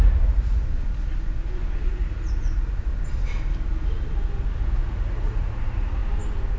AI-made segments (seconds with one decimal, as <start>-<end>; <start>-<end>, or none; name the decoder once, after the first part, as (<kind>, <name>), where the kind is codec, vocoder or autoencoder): 0.0-0.7 (vocoder, Vocos); 1.9-2.9; 4.7-6.0